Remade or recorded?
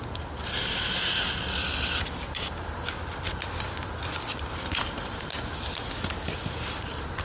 remade